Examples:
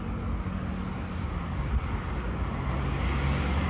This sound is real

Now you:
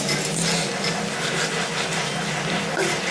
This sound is real